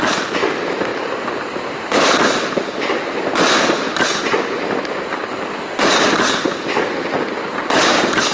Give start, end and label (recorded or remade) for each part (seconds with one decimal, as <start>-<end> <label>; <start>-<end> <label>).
0.0-8.3 recorded

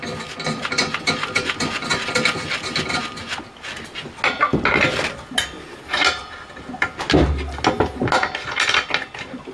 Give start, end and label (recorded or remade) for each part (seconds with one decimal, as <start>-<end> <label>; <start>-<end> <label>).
0.0-9.5 recorded

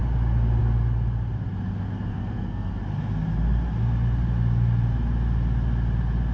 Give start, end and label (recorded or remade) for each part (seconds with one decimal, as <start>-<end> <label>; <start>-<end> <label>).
0.0-2.1 recorded; 2.1-2.7 remade; 2.7-6.3 recorded

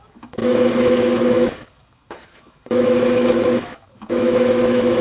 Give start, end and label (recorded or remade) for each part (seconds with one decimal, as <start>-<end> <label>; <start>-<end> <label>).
0.0-5.0 remade

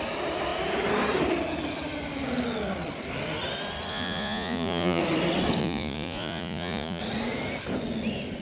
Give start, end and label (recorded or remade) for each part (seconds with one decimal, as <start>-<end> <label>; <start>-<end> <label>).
0.0-3.9 recorded; 3.9-5.0 remade; 5.0-5.6 recorded; 5.6-7.0 remade; 7.0-8.4 recorded

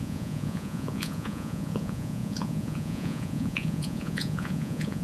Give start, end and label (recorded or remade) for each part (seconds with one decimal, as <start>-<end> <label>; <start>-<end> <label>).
0.0-5.0 remade

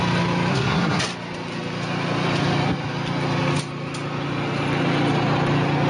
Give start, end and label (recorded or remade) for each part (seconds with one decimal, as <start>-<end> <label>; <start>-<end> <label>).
0.0-0.5 recorded; 0.5-1.0 remade; 1.0-5.9 recorded